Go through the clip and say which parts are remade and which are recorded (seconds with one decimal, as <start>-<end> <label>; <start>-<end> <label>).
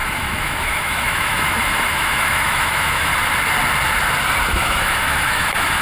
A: 0.0-3.1 remade; 3.1-4.5 recorded; 4.5-5.8 remade